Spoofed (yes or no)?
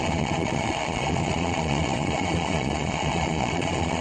yes